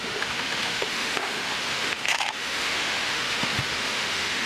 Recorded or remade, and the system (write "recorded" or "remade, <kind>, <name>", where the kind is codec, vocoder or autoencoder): remade, autoencoder, DAC-VAE